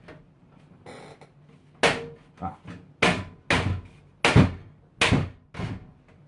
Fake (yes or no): no